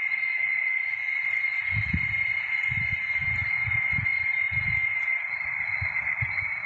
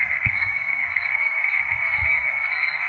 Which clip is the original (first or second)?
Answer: first